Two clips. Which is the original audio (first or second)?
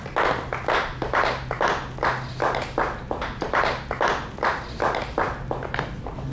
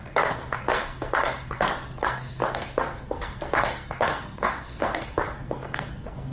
first